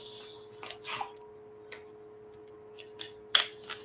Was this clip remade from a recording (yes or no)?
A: no